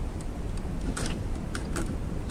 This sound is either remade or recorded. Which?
recorded